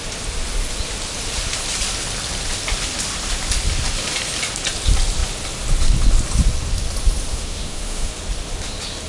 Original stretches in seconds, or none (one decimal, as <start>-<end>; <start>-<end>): 0.0-7.3; 8.1-9.1